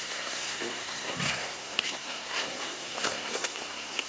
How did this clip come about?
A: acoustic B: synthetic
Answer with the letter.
B